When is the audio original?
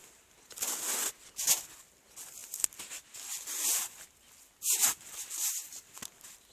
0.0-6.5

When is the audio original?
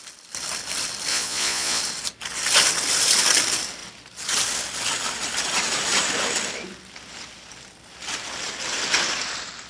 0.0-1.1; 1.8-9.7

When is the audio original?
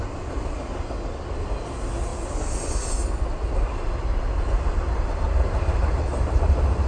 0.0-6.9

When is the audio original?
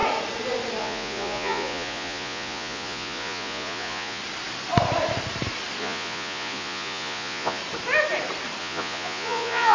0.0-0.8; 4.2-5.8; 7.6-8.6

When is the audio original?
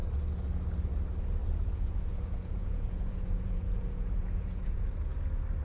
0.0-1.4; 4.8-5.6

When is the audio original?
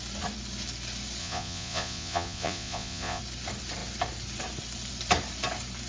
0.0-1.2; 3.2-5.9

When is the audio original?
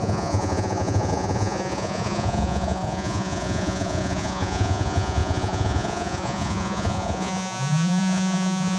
none